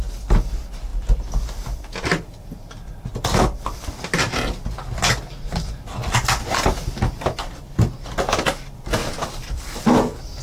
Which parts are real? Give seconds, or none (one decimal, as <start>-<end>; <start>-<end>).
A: 0.0-9.0; 9.8-10.4